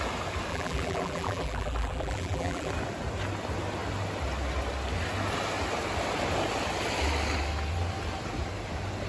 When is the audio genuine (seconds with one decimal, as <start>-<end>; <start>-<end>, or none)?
0.0-0.5; 2.7-9.1